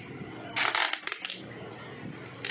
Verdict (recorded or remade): recorded